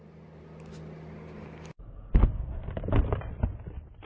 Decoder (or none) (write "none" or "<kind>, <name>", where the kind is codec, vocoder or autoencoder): none